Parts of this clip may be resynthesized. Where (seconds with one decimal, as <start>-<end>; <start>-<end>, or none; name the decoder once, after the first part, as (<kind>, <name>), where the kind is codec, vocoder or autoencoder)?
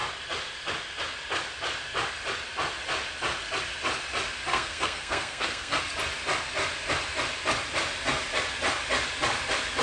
4.5-5.8 (codec, SNAC)